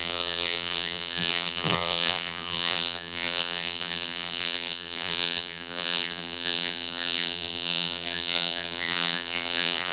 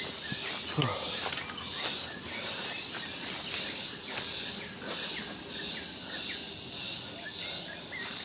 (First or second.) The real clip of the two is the second